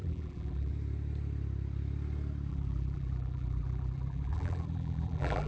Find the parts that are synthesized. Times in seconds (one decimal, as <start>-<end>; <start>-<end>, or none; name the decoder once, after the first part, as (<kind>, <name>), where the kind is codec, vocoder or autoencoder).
0.0-0.7 (vocoder, BigVGAN v2); 2.5-5.5